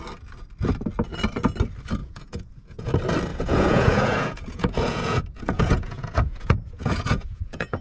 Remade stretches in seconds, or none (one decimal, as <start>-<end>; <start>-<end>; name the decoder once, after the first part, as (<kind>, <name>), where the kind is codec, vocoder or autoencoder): 2.0-2.9 (vocoder, Vocos); 3.3-7.8